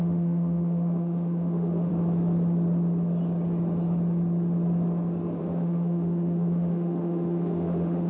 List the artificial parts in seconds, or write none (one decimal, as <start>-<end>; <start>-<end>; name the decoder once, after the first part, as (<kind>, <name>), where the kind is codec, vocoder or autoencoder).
0.0-1.9 (autoencoder, DAC-VAE); 5.4-8.1